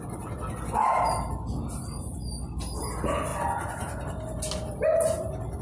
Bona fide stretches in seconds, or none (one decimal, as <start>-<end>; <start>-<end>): 0.0-5.6